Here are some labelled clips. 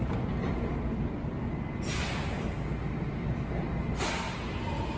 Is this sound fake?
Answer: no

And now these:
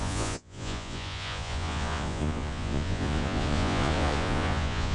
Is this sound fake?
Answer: yes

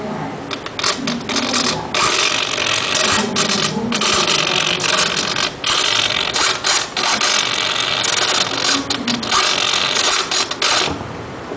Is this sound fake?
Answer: no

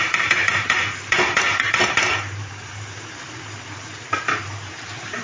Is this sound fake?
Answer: yes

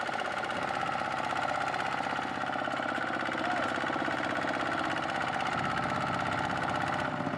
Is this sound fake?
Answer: no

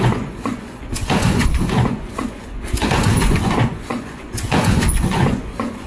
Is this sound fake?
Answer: yes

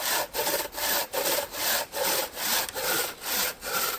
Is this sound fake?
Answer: yes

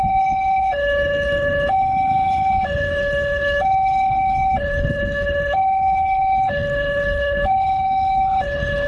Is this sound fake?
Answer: yes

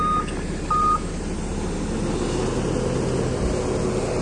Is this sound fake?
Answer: no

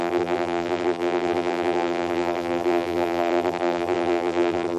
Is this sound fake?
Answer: yes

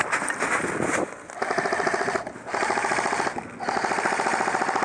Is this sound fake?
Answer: no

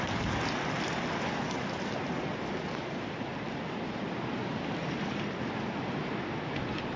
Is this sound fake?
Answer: no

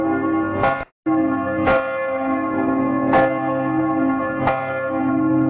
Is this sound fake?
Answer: no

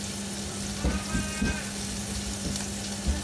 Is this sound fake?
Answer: no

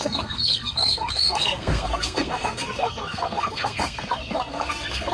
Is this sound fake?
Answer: yes